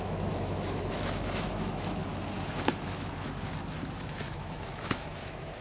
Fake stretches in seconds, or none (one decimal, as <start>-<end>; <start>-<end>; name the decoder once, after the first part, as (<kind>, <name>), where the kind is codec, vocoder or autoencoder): 0.0-5.6 (autoencoder, DAC-VAE)